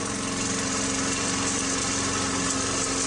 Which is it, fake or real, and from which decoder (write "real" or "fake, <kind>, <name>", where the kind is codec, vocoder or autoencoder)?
real